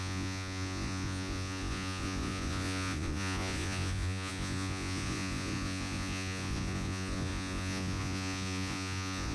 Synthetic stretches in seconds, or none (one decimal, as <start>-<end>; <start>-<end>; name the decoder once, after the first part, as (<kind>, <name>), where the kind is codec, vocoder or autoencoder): 0.0-9.3 (vocoder, Vocos)